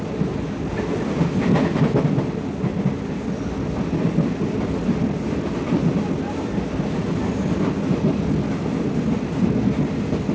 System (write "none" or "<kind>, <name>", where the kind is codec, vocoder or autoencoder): none